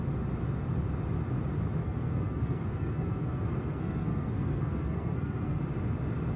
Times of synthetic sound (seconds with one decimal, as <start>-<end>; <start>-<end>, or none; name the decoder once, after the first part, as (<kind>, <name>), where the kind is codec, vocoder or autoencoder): 1.8-5.6 (codec, SNAC)